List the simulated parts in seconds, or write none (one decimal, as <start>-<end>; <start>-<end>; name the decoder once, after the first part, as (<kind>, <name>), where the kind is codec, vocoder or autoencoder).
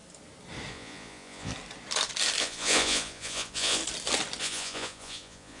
0.7-1.5 (vocoder, Vocos); 2.4-3.8; 4.4-5.6